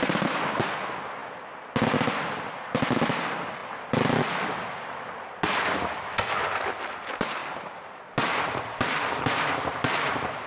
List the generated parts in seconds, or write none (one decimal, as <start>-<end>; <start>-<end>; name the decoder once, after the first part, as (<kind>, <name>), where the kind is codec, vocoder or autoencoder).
none